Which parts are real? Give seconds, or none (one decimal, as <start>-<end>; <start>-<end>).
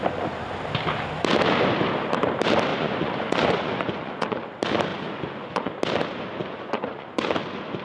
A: 0.0-2.7; 4.4-4.9; 5.7-6.3; 7.2-7.8